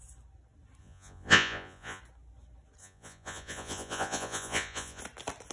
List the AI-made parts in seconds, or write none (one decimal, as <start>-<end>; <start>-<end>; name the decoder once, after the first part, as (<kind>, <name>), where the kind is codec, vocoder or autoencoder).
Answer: 0.8-2.0 (vocoder, Vocos); 2.8-5.0